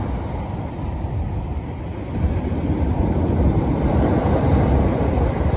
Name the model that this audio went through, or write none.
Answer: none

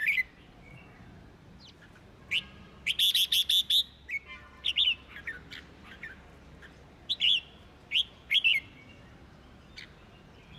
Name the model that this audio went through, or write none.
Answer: none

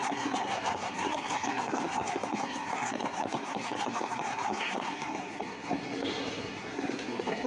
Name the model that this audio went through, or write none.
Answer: codec, SNAC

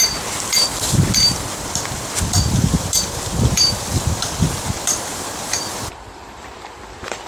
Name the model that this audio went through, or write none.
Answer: vocoder, BigVGAN v2